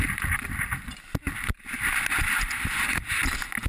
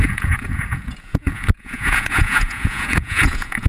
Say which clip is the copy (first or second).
second